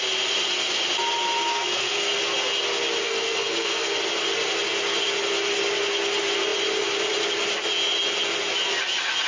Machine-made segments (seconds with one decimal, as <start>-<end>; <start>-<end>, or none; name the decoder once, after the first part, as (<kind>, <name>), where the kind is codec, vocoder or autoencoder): 1.5-2.2 (codec, SNAC); 3.0-4.0